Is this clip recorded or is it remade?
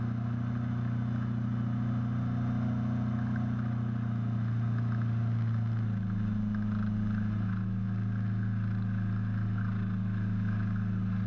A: recorded